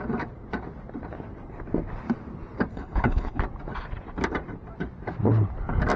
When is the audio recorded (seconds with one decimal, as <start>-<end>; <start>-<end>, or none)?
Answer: 0.0-2.7; 3.4-6.0